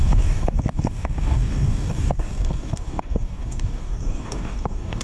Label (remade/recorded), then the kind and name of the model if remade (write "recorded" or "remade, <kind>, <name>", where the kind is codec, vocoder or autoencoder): remade, codec, DAC